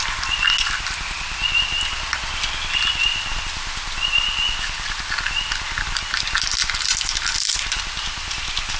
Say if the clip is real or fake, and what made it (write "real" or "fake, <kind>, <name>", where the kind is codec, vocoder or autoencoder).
real